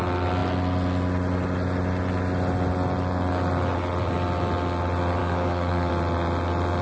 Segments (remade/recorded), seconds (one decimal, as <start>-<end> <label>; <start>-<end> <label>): 0.0-5.2 recorded; 5.2-5.9 remade; 5.9-6.8 recorded

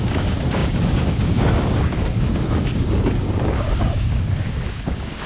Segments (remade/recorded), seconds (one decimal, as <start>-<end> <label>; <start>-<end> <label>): 0.0-5.3 remade